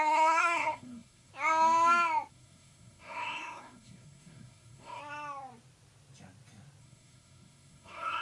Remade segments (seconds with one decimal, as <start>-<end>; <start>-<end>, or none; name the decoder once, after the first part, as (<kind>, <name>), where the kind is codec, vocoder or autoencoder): 0.0-1.3 (codec, SNAC); 2.3-5.0; 6.8-8.2